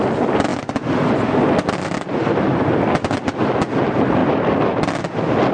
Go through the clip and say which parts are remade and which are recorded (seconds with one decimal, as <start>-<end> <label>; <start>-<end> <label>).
0.0-5.5 recorded